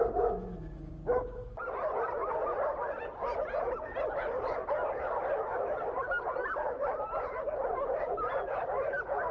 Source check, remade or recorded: recorded